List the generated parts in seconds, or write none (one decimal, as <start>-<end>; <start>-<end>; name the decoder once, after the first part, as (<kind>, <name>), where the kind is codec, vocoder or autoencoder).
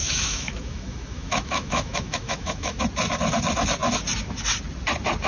0.0-2.8 (autoencoder, DAC-VAE)